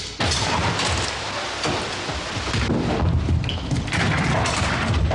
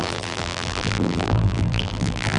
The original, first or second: first